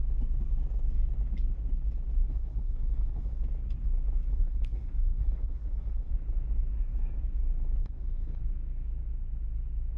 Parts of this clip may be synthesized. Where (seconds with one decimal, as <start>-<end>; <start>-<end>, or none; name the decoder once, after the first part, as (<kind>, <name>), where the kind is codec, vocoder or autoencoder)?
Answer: 2.2-3.4 (codec, HILCodec); 4.3-6.1; 7.8-8.4